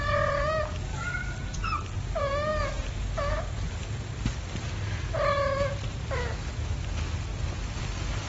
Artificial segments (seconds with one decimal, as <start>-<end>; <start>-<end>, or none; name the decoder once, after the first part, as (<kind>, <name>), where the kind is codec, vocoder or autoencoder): 7.3-7.8 (vocoder, BigVGAN v2)